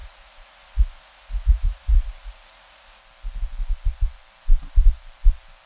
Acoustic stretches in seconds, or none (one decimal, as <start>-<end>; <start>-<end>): 3.0-5.7